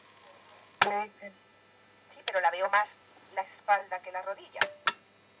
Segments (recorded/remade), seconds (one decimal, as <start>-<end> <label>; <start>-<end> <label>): 0.0-1.5 recorded; 1.5-3.4 remade; 3.4-3.8 recorded; 3.8-4.4 remade; 4.4-5.4 recorded